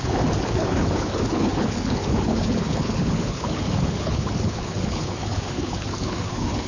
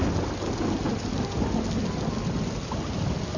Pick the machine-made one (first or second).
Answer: first